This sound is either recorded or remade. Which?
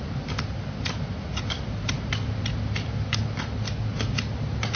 recorded